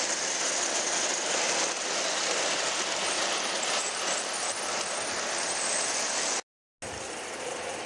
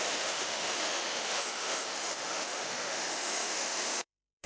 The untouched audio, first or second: first